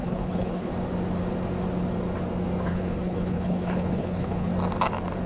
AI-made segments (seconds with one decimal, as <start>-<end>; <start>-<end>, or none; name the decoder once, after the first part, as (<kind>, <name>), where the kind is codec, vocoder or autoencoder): 0.0-0.7 (codec, HILCodec); 2.7-4.5